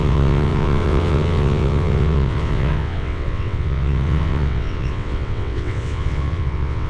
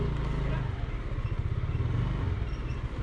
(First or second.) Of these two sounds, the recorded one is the second